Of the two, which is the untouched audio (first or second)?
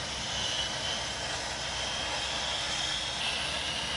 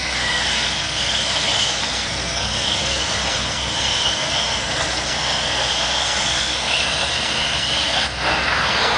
first